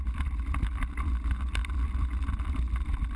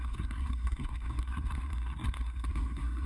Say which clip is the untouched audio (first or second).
first